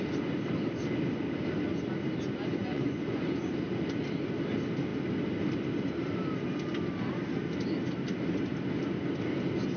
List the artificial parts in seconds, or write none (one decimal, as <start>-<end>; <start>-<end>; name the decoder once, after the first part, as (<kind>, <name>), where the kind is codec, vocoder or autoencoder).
2.6-3.5 (vocoder, Vocos)